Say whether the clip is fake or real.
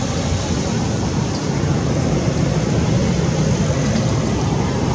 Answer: real